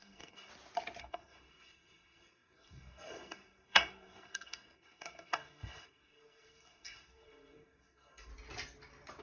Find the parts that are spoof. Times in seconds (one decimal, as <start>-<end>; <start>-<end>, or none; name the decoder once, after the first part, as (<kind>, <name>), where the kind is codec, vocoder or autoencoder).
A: 0.0-0.5 (codec, SNAC); 1.0-8.3